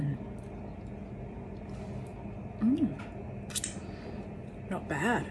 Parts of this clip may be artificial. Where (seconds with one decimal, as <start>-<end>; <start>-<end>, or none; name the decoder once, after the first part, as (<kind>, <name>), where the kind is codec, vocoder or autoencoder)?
none